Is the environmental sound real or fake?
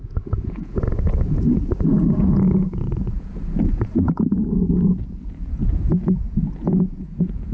fake